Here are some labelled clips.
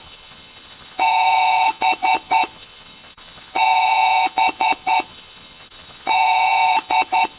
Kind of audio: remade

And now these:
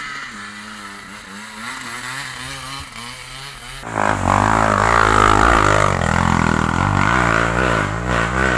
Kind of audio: recorded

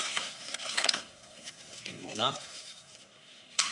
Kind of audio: remade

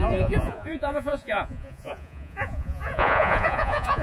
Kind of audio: remade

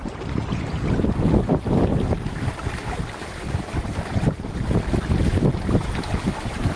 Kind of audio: recorded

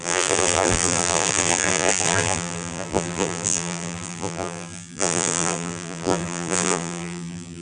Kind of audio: remade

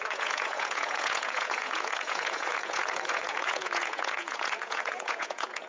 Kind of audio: remade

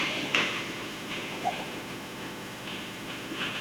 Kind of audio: remade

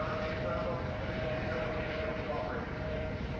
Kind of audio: remade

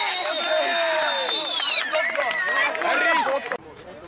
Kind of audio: recorded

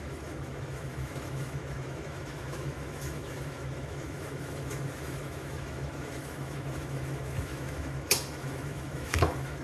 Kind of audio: remade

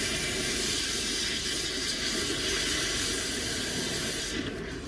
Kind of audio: remade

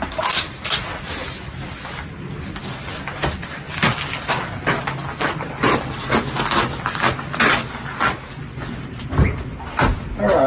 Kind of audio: recorded